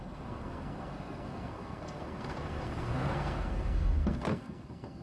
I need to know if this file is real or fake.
fake